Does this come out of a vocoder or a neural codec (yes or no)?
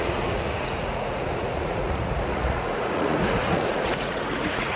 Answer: yes